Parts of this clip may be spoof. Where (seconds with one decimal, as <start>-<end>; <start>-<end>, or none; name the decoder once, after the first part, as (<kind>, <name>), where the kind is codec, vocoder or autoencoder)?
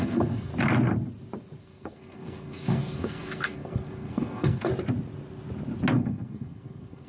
0.0-0.5 (codec, SNAC); 1.6-4.7; 5.9-7.1